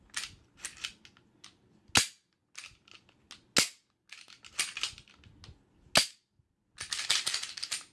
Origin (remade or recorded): recorded